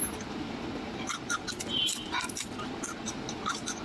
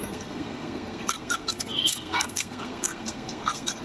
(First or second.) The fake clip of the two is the second